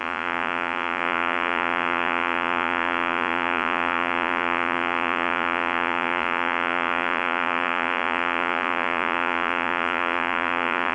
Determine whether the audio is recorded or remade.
remade